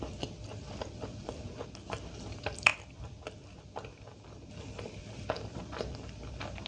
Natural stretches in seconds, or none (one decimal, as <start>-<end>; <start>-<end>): 0.0-6.7

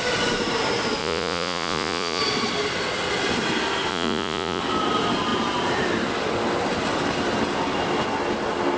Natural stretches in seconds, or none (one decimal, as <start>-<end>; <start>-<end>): 0.0-1.0; 2.2-3.9; 4.6-8.8

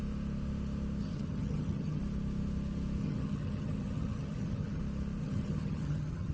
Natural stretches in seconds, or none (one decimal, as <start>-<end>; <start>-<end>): 0.0-1.0; 2.0-3.0; 4.8-5.2

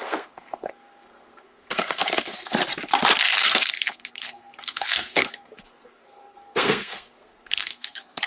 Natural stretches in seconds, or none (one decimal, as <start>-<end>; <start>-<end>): 2.6-3.2

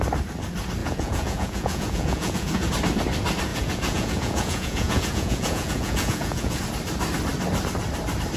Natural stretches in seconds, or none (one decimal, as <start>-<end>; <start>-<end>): 0.0-0.8; 2.7-3.5; 6.6-8.4

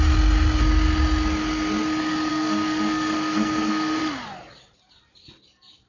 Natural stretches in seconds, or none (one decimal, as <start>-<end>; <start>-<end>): 0.0-2.3; 4.0-5.9

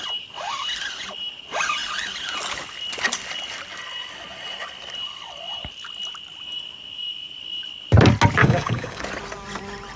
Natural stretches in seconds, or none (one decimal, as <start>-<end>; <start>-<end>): 0.0-8.4; 9.0-10.0